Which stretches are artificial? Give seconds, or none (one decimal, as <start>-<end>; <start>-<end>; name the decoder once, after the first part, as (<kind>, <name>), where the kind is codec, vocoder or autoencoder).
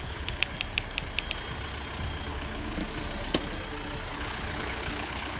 0.0-0.5 (codec, HILCodec); 2.3-2.8; 4.1-5.4